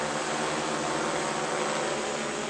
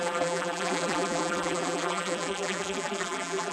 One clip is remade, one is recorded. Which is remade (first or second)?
second